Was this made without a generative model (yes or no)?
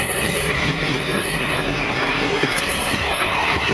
no